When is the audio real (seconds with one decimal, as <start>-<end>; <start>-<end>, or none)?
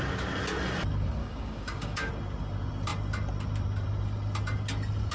0.0-1.2; 2.1-5.1